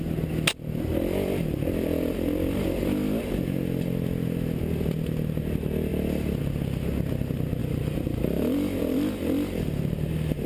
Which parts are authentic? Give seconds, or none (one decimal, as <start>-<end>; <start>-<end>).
0.0-7.6